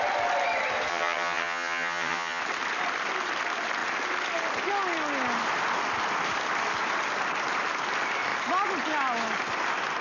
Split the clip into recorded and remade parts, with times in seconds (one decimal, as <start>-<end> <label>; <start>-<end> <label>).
0.0-0.9 recorded; 0.9-2.4 remade; 2.4-10.0 recorded